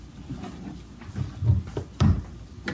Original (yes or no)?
yes